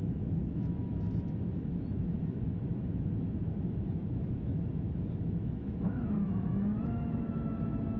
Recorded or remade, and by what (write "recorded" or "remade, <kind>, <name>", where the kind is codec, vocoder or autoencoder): remade, autoencoder, DAC-VAE